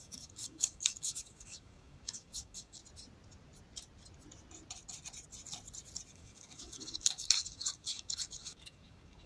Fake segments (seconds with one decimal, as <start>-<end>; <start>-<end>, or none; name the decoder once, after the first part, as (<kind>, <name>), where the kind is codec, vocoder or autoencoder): 0.0-2.8 (codec, DAC); 6.1-9.3